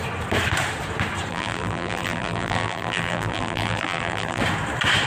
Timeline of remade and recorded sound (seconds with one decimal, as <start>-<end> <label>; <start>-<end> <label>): 0.0-1.3 recorded; 1.3-4.4 remade; 4.4-5.1 recorded